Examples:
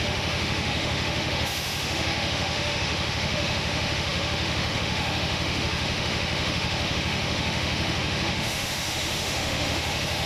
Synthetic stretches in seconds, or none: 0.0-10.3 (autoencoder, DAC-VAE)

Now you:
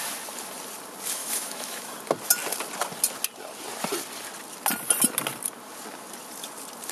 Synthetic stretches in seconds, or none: 1.2-1.9 (autoencoder, DAC-VAE)

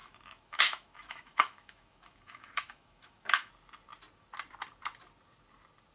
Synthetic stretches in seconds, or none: 0.0-3.5 (autoencoder, DAC-VAE)

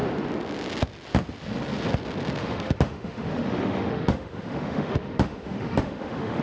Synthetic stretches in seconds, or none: 2.4-6.4 (autoencoder, DAC-VAE)

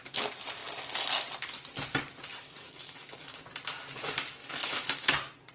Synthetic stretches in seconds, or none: 2.3-3.4 (autoencoder, DAC-VAE); 4.4-5.1

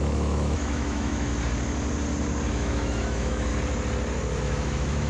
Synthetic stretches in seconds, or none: 0.0-1.3 (autoencoder, DAC-VAE); 2.5-3.5; 4.4-5.1